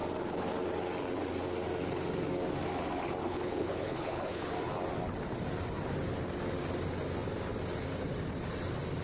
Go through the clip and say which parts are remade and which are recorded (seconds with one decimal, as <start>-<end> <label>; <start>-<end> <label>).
0.0-3.2 recorded; 3.2-4.5 remade; 4.5-9.0 recorded